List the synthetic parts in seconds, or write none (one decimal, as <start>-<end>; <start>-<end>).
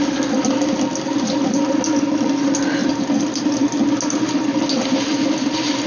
none